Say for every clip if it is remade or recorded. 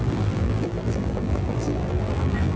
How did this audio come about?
remade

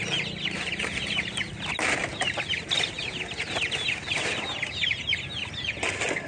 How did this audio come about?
recorded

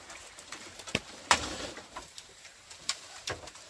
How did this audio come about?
remade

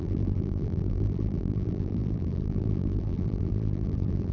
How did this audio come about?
remade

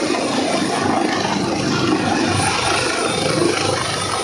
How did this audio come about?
recorded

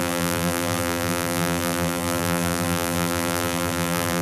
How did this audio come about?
remade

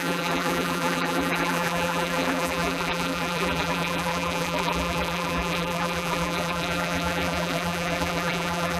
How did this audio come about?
remade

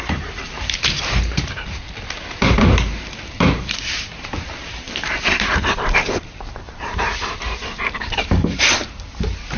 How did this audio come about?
remade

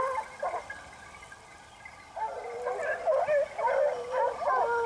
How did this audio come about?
recorded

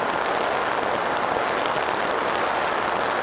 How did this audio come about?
recorded